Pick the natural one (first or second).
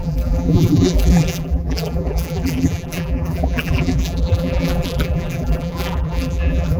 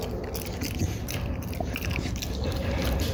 second